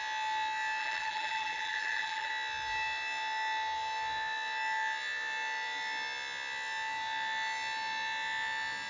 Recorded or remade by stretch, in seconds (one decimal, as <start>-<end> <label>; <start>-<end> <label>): 0.0-0.8 recorded; 0.8-2.3 remade; 2.3-8.9 recorded

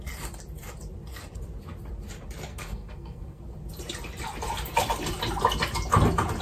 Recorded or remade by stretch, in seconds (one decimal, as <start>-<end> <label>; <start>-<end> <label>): 0.0-2.5 recorded; 2.5-3.4 remade; 3.4-6.4 recorded

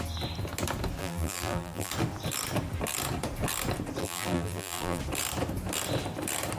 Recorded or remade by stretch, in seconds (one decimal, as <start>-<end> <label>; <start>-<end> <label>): 0.0-1.0 recorded; 1.0-1.9 remade; 1.9-4.0 recorded; 4.0-5.0 remade; 5.0-6.6 recorded

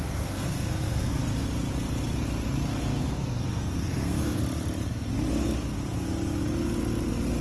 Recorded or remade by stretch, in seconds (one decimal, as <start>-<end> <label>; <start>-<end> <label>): 0.0-1.2 remade; 1.2-2.7 recorded; 2.7-4.4 remade; 4.4-7.4 recorded

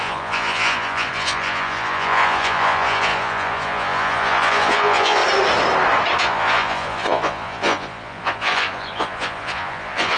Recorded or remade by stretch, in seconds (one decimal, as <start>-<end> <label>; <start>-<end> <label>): 0.0-5.2 remade; 5.2-6.2 recorded; 6.2-10.2 remade

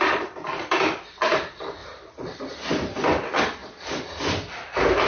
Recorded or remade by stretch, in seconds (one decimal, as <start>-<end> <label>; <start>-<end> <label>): 0.0-1.8 remade; 1.8-2.7 recorded; 2.7-3.6 remade; 3.6-5.1 recorded

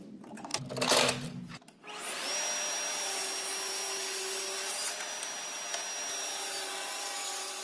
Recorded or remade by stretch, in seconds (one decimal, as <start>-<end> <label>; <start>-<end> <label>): 0.0-7.6 recorded